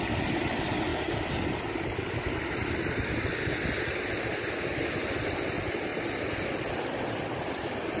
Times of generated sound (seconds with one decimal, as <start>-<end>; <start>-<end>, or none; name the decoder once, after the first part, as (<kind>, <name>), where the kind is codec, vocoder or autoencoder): none